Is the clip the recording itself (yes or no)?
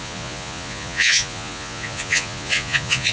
no